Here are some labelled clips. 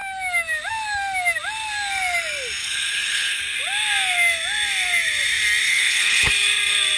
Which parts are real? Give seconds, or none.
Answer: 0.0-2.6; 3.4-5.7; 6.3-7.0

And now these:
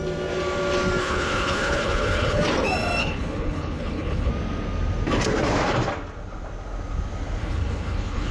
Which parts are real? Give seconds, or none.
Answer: 0.0-1.0; 2.4-3.0; 4.3-7.4